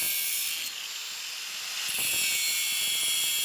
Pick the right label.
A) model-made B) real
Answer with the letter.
B